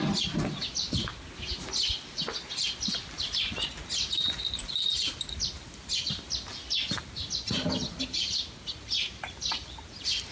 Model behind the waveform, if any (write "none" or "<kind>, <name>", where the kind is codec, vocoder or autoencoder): none